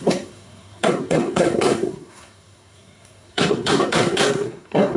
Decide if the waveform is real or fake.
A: fake